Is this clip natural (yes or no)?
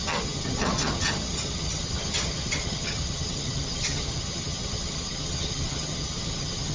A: no